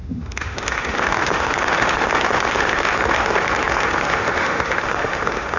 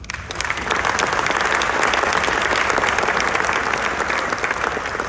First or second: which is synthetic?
first